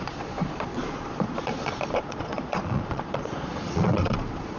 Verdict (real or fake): fake